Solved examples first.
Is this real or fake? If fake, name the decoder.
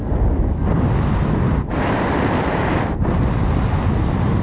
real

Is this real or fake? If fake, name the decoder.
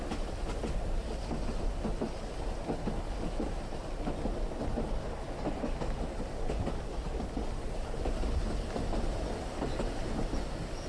real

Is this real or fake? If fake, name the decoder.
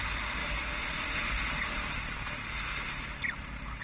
real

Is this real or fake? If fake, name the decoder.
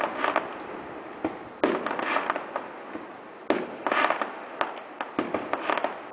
real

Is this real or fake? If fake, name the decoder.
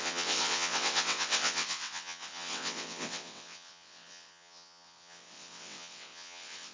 fake, vocoder, WaveNeXt